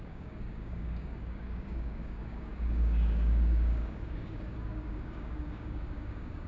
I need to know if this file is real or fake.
fake